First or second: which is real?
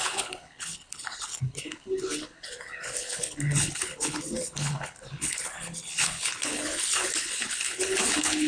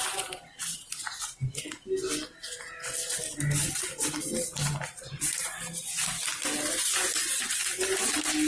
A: second